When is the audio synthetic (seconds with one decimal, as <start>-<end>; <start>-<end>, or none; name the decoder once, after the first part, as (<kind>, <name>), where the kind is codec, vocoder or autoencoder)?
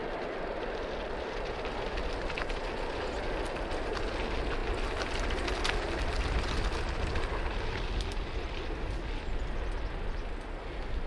none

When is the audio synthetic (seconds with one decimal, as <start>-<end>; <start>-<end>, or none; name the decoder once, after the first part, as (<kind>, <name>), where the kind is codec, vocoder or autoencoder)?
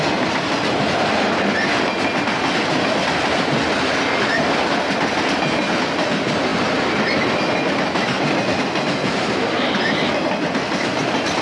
none